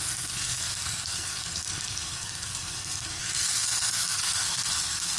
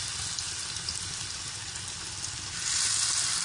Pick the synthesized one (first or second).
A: first